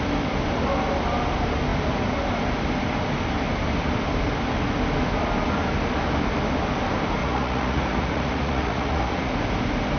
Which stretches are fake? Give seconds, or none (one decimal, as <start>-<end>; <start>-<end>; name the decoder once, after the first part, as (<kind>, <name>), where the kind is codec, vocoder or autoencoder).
7.2-9.3 (vocoder, Vocos)